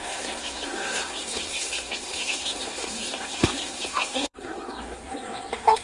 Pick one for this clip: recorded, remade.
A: remade